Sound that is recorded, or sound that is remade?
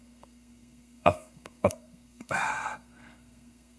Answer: remade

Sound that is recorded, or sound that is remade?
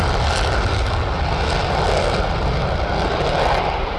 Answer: recorded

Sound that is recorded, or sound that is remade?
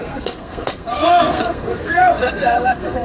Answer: remade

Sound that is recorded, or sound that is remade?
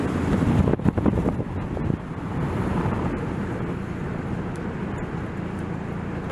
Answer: recorded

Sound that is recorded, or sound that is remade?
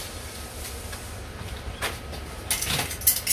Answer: recorded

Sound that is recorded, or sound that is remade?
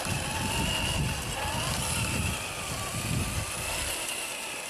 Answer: recorded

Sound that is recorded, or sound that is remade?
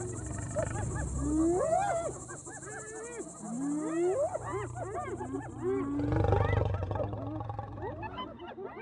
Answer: recorded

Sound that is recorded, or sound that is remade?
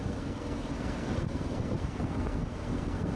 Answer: remade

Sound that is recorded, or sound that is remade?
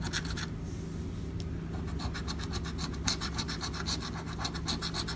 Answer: recorded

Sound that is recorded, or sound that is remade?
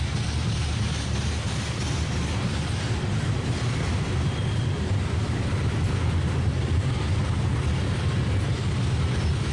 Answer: recorded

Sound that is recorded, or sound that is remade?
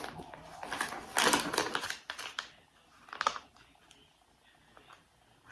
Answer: recorded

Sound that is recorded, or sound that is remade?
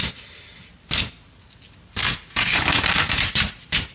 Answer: recorded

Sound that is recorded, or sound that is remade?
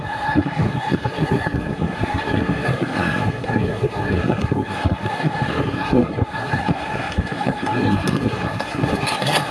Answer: remade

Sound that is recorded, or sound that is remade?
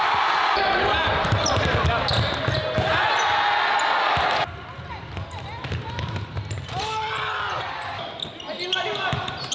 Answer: recorded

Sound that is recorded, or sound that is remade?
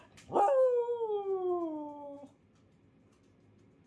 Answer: recorded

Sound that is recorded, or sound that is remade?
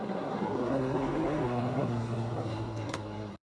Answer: remade